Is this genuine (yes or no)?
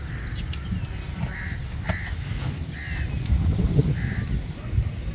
yes